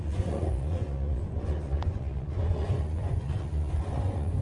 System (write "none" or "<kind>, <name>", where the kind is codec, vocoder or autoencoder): vocoder, Vocos